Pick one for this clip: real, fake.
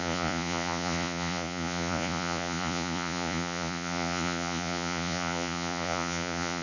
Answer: fake